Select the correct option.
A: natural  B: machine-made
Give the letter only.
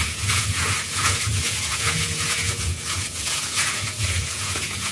B